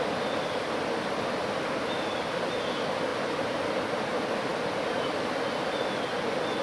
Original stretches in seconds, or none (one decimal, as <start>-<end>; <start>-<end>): 0.0-6.6